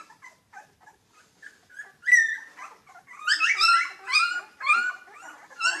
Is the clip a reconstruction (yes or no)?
no